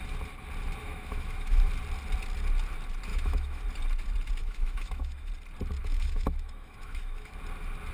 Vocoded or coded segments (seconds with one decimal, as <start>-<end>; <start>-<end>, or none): 0.8-1.7; 3.1-3.6; 4.4-5.3; 5.8-7.3